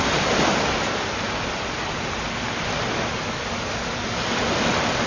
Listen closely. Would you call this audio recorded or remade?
recorded